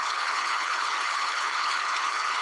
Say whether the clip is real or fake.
fake